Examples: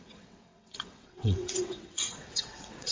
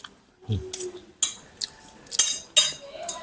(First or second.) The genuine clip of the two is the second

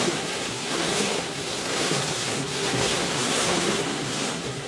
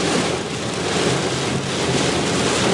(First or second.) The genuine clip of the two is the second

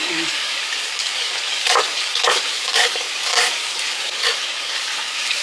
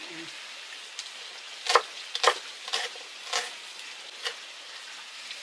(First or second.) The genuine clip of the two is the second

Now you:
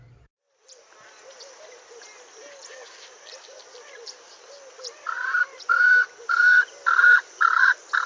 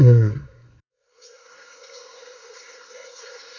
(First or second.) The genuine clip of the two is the first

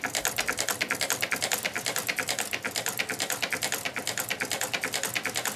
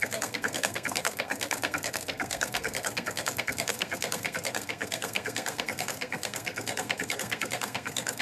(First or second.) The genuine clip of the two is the first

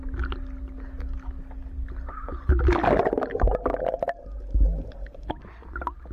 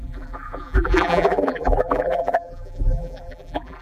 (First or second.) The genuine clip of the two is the first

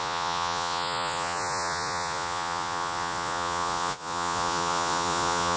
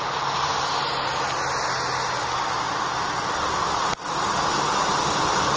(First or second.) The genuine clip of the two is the second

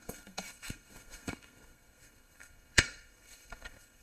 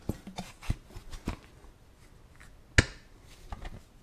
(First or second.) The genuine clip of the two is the second